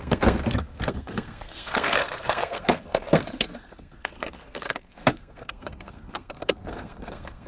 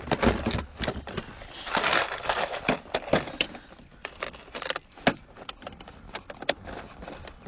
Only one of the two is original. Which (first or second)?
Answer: second